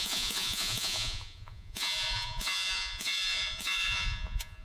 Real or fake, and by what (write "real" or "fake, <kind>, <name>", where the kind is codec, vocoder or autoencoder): fake, vocoder, Vocos